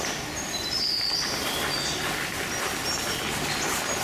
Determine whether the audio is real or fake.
real